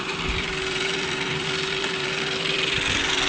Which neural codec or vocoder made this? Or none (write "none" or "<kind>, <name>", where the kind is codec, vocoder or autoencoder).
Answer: vocoder, BigVGAN v2